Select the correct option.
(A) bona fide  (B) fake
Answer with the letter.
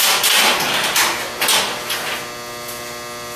A